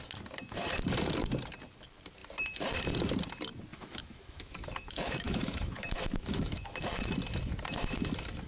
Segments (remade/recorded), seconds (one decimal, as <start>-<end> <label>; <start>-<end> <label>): 0.0-3.7 recorded; 3.7-6.8 remade; 6.8-8.5 recorded